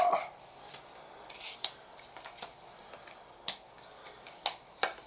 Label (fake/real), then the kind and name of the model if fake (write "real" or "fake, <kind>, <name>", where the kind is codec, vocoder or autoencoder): real